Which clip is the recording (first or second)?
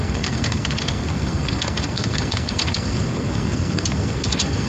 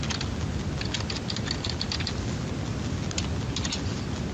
second